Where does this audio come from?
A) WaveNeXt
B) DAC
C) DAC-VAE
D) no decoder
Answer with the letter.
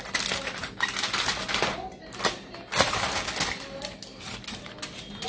D